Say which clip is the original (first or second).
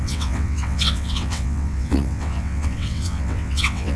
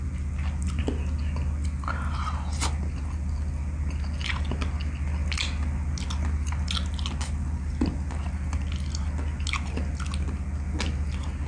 second